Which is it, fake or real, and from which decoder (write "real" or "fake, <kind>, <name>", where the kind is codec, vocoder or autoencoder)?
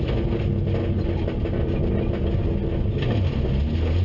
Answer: real